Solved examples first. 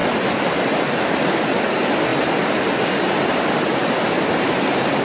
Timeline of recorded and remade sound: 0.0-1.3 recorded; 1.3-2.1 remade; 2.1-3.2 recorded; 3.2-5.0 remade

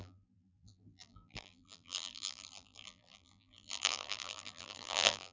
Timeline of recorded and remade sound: 0.0-5.3 remade

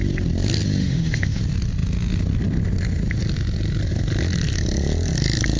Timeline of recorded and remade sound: 0.0-0.8 recorded; 0.8-1.4 remade; 1.4-5.6 recorded

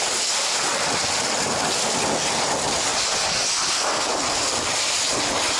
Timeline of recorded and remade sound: 0.0-5.6 recorded

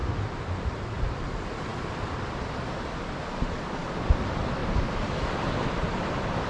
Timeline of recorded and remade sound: 0.0-0.6 recorded; 0.6-6.5 remade

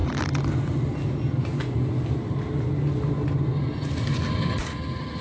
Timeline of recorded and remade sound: 0.0-5.2 recorded

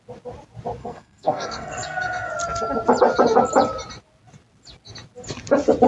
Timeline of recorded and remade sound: 0.0-0.8 recorded; 0.8-2.3 remade; 2.3-5.9 recorded